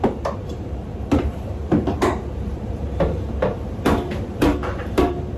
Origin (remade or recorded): remade